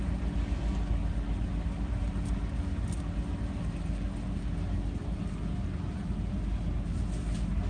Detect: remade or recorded recorded